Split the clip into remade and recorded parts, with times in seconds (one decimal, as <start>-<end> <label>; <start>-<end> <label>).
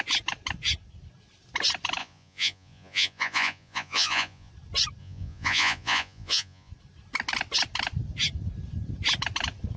0.0-2.0 recorded; 2.0-4.5 remade; 4.5-5.0 recorded; 5.0-6.7 remade; 6.7-9.8 recorded